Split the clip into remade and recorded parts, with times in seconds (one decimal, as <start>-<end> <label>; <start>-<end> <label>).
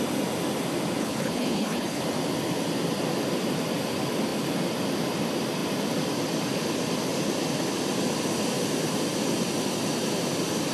0.0-1.0 recorded; 1.0-2.0 remade; 2.0-10.7 recorded